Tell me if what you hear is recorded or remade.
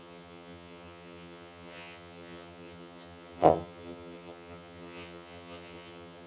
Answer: remade